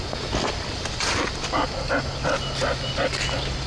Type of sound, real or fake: real